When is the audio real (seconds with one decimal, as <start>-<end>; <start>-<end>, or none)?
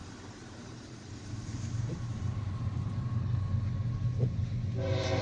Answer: 3.1-5.2